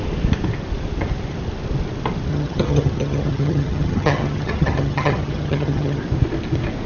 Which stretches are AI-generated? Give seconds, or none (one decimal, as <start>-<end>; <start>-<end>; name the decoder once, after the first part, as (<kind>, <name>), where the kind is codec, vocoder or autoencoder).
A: 2.3-6.0 (vocoder, HiFi-GAN)